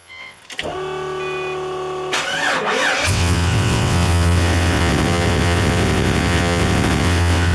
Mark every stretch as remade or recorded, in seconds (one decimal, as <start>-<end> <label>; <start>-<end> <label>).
0.0-0.4 remade; 0.4-3.1 recorded; 3.1-7.5 remade